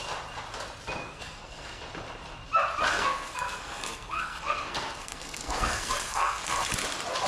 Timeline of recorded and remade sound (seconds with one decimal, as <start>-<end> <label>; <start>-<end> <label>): 0.0-1.0 recorded; 1.0-1.8 remade; 1.8-2.9 recorded; 2.9-6.7 remade; 6.7-7.3 recorded